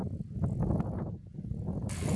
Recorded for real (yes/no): no